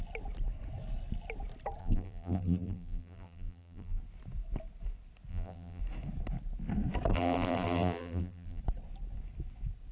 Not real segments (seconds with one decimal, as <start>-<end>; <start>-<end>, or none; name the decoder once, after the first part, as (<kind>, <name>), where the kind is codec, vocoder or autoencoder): 1.8-4.0 (vocoder, BigVGAN v2); 5.3-5.8; 7.1-8.6